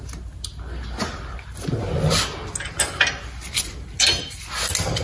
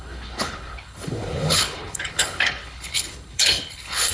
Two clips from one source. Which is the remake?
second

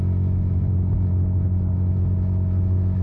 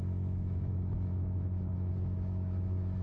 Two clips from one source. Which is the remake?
second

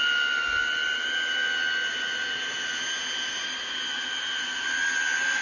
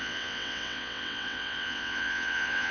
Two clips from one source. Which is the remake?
second